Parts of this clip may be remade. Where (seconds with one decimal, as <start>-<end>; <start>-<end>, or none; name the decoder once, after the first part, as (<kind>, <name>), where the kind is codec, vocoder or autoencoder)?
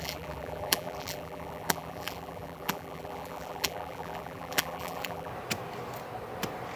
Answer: 0.0-5.3 (vocoder, BigVGAN v2)